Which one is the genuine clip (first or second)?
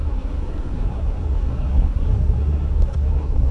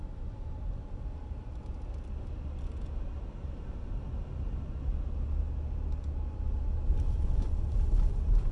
second